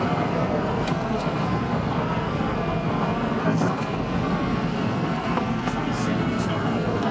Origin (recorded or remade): remade